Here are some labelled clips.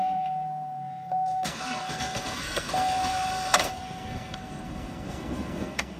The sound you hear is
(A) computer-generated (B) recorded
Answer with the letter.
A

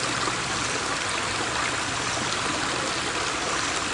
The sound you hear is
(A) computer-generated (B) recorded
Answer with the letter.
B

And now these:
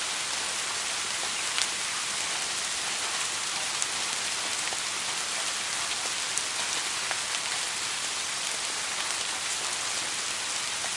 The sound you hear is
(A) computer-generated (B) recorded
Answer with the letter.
B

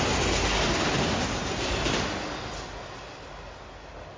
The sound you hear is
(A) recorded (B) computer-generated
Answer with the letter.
A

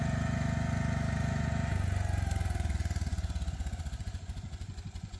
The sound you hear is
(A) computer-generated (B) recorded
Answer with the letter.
A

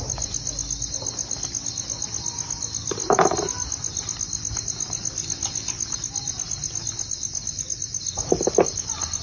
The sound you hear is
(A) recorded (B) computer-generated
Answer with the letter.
A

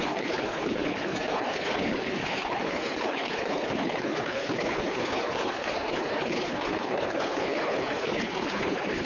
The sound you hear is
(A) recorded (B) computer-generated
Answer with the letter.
B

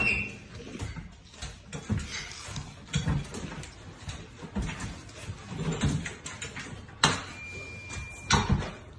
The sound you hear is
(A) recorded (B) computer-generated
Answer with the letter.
A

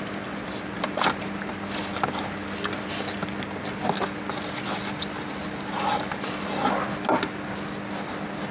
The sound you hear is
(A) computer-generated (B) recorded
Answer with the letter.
B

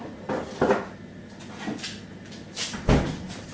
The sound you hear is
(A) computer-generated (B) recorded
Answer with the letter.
B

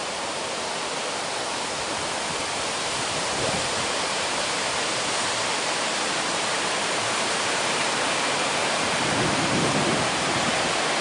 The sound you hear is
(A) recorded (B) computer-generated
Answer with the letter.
B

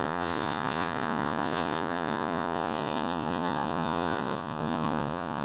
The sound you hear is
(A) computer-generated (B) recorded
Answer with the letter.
A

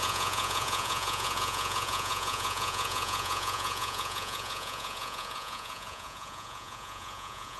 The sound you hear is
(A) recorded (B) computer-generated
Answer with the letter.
B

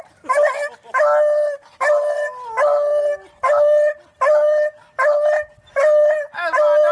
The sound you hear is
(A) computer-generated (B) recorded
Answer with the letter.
B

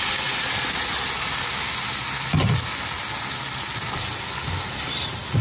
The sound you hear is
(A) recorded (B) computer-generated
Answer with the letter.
A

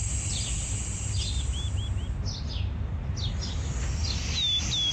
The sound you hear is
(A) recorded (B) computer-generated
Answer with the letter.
A